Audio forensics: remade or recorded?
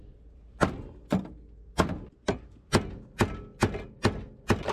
recorded